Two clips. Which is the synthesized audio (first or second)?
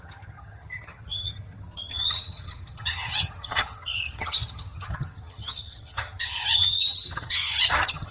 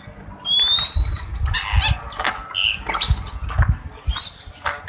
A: first